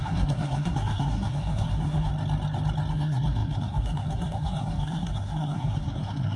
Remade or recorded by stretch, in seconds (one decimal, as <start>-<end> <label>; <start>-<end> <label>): 0.0-2.1 remade; 2.1-2.9 recorded; 2.9-6.4 remade